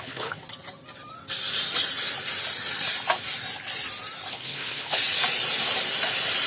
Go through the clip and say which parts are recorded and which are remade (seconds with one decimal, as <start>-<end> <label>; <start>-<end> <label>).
0.0-0.4 remade; 0.4-4.3 recorded; 4.3-5.0 remade; 5.0-6.5 recorded